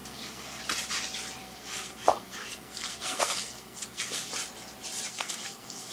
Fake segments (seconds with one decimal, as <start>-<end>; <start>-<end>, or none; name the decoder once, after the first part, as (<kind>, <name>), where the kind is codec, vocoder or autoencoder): 0.0-0.6 (codec, SNAC); 1.4-4.3; 5.1-5.9